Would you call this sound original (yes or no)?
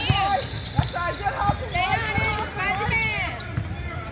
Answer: yes